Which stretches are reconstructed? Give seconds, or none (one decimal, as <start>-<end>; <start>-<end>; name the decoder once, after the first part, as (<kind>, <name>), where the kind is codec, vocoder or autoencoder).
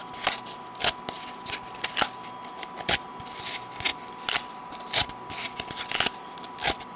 none